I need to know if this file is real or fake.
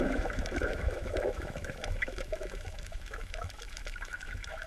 fake